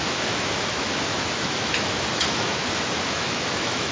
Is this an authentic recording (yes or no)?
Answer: no